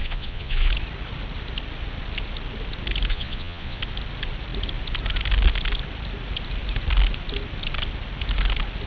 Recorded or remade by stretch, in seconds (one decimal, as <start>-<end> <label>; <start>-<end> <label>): 0.0-0.7 remade; 0.7-3.1 recorded; 3.1-3.8 remade; 3.8-8.9 recorded